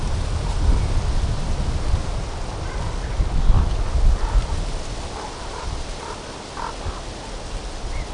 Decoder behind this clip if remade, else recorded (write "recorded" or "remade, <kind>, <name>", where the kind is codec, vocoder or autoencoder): recorded